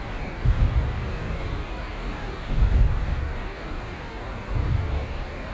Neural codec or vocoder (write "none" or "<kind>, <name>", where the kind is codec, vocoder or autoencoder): codec, DAC